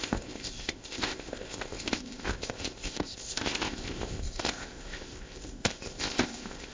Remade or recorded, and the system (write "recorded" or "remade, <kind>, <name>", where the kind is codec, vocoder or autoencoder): remade, codec, ZipCodec